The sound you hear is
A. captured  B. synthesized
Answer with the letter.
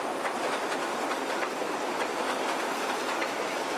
A